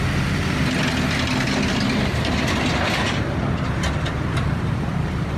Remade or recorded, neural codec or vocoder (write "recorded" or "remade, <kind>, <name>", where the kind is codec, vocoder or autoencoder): recorded